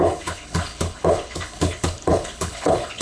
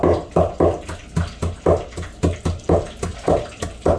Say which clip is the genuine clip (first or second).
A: second